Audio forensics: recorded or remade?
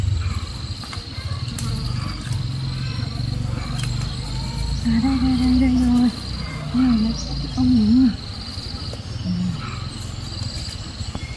recorded